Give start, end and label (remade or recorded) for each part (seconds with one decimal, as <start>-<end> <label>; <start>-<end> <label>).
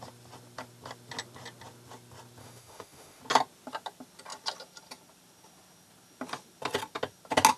0.0-2.4 recorded; 2.4-3.2 remade; 3.2-7.6 recorded